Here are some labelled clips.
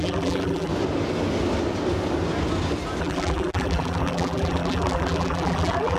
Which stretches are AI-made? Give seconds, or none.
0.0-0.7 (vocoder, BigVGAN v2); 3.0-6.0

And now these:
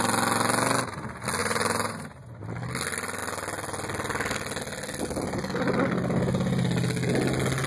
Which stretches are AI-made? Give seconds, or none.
1.4-2.3 (vocoder, BigVGAN v2)

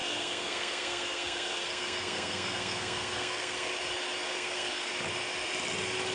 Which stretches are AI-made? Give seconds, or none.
0.0-3.7 (codec, SNAC); 4.3-4.9